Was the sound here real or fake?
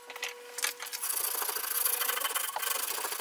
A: real